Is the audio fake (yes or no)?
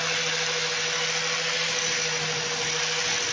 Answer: no